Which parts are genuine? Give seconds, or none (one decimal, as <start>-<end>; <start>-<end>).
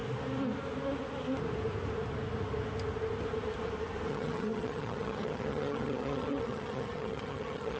0.0-4.1